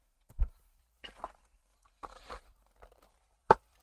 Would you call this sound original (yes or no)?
no